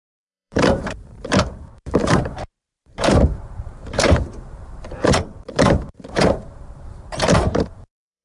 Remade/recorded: remade